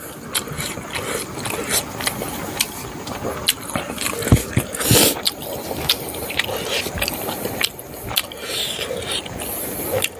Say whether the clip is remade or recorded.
recorded